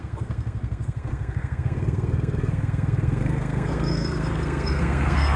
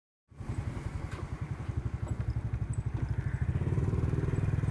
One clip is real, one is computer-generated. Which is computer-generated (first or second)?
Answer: first